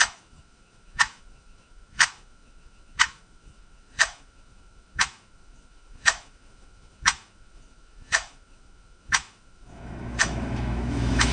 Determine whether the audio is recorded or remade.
remade